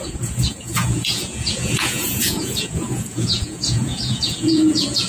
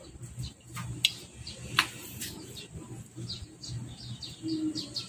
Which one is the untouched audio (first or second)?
second